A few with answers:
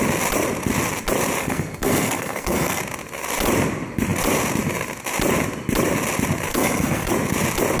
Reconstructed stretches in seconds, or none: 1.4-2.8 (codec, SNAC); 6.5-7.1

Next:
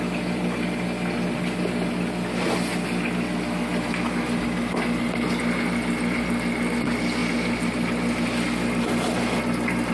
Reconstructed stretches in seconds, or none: none

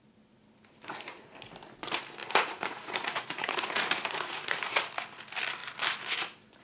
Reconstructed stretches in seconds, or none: 2.2-4.8 (vocoder, Vocos)

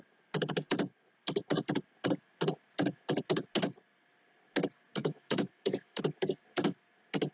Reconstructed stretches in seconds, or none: 5.0-6.0 (autoencoder, DAC-VAE)

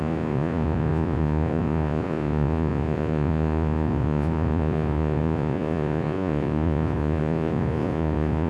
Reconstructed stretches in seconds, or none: 0.0-8.5 (vocoder, Vocos)